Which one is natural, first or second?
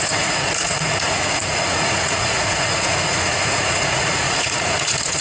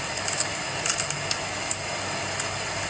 second